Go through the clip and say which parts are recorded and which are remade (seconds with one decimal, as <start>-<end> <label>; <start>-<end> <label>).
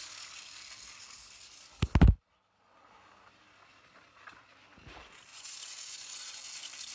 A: 0.0-5.3 recorded; 5.3-6.4 remade; 6.4-6.9 recorded